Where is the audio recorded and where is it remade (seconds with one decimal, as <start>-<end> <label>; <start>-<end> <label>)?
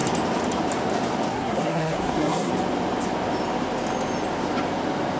0.0-1.3 recorded; 1.3-2.5 remade; 2.5-5.2 recorded